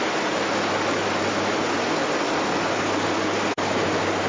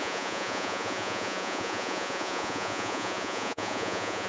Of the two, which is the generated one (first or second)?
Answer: second